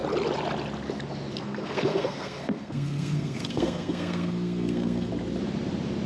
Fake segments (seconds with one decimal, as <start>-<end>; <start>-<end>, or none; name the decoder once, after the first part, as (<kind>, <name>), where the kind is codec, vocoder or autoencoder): 1.4-5.1 (codec, SNAC)